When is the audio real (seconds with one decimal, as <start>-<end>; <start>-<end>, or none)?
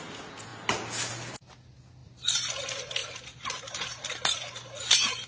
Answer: 0.0-5.3